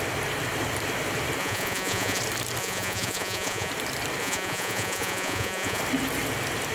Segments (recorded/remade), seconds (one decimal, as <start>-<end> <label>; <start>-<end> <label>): 0.0-1.4 recorded; 1.4-2.2 remade; 2.2-2.6 recorded; 2.6-3.7 remade; 3.7-4.2 recorded; 4.2-5.8 remade; 5.8-6.7 recorded